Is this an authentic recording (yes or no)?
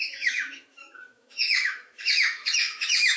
no